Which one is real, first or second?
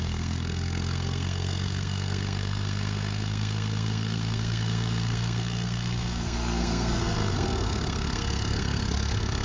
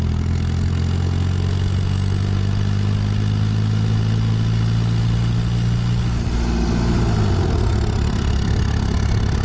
second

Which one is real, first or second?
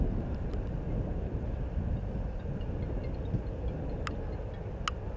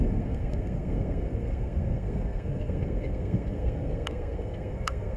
first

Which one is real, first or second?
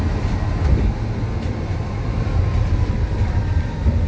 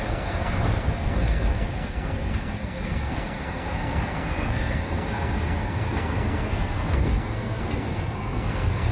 first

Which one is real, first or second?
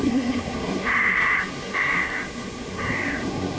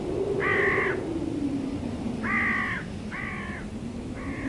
second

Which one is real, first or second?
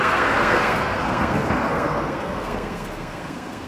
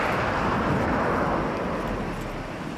second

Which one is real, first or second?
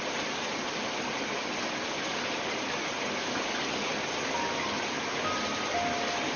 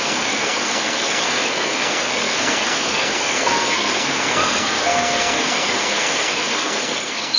first